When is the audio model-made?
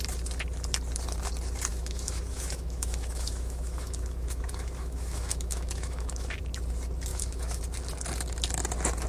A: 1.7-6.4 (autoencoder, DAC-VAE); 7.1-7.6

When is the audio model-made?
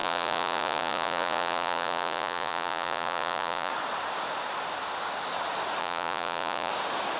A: 0.0-3.7 (vocoder, Vocos); 5.8-6.7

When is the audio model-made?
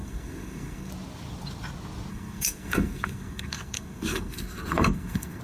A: 0.0-0.9 (codec, SNAC); 2.1-5.4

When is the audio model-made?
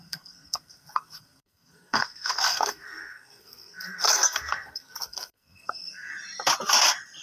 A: 0.0-6.1 (codec, SNAC)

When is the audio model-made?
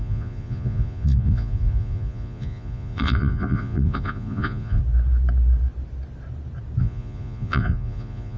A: 0.0-4.8 (vocoder, Vocos); 6.8-8.4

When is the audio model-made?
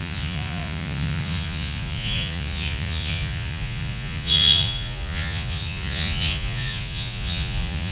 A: 0.0-7.9 (vocoder, Vocos)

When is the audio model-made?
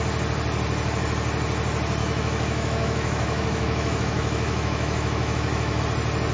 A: 2.0-5.8 (autoencoder, DAC-VAE)